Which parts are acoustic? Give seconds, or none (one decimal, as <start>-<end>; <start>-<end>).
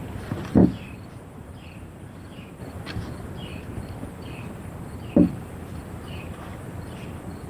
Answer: 0.0-0.6; 2.6-7.5